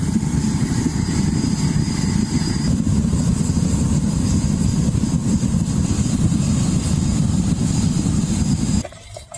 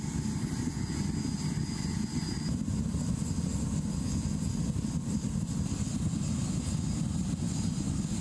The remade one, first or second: first